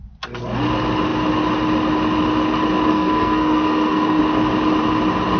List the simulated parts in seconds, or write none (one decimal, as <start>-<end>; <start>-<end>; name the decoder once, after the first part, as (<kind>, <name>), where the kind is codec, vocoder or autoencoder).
2.9-4.2 (codec, SNAC)